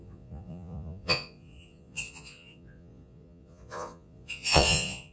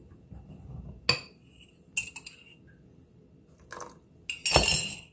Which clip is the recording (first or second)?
second